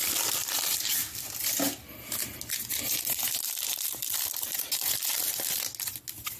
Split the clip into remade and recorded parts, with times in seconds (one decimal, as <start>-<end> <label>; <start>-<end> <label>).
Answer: 0.0-6.4 recorded